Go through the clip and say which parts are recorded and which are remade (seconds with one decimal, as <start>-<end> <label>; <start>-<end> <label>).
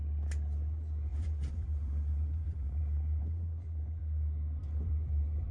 0.0-1.1 recorded; 1.1-4.0 remade; 4.0-4.6 recorded; 4.6-5.5 remade